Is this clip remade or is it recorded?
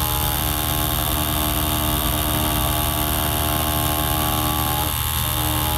recorded